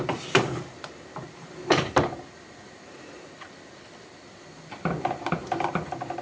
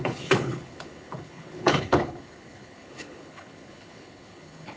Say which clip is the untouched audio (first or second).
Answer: first